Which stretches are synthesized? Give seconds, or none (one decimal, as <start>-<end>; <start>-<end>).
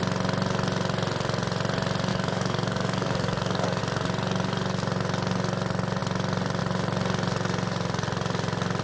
2.1-3.8